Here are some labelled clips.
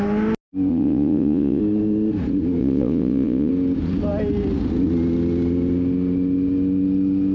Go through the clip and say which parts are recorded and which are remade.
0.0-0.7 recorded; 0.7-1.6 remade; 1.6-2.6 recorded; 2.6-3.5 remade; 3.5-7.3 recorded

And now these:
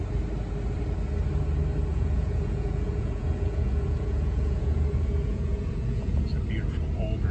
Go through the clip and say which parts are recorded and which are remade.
0.0-1.9 recorded; 1.9-6.3 remade; 6.3-7.3 recorded

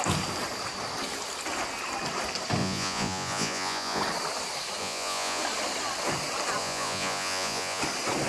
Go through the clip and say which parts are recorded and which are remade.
0.0-2.6 recorded; 2.6-4.0 remade; 4.0-4.8 recorded; 4.8-5.4 remade; 5.4-6.6 recorded; 6.6-7.8 remade; 7.8-8.3 recorded

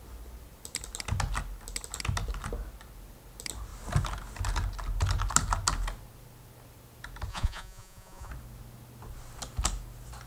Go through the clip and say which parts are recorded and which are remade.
0.0-7.3 recorded; 7.3-8.3 remade; 8.3-10.3 recorded

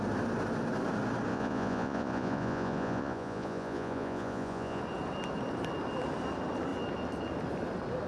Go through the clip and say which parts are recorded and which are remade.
0.0-1.3 recorded; 1.3-4.8 remade; 4.8-8.1 recorded